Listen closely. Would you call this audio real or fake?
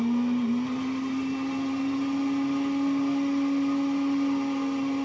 real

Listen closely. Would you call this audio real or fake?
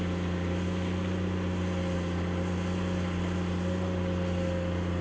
real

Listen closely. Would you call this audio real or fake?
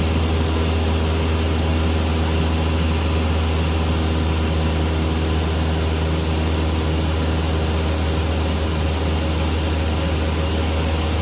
real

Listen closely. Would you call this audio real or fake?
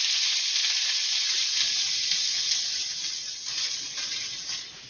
real